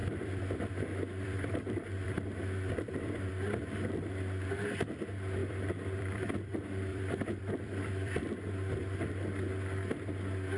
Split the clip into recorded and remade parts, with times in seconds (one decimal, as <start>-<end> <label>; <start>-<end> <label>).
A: 0.0-3.3 remade; 3.3-5.4 recorded; 5.4-6.5 remade; 6.5-6.9 recorded; 6.9-8.2 remade; 8.2-10.6 recorded